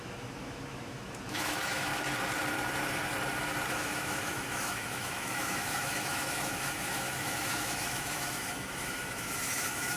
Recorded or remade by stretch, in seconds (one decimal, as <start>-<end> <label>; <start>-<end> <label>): 0.0-1.9 remade; 1.9-3.7 recorded; 3.7-10.0 remade